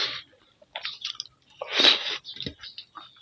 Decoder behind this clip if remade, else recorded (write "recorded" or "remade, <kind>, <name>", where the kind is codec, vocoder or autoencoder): recorded